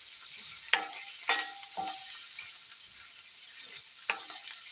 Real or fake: real